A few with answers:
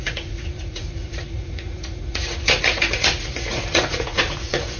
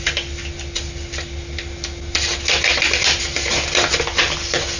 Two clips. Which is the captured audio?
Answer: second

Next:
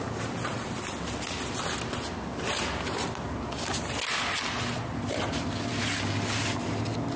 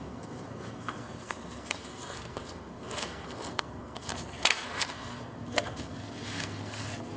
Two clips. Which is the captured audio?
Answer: first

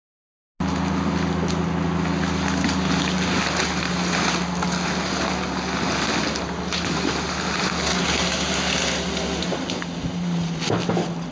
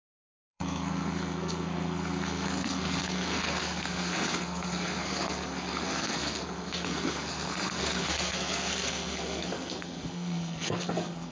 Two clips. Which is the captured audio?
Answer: first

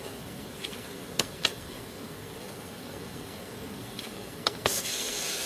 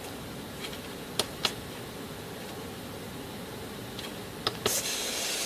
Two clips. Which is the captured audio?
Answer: second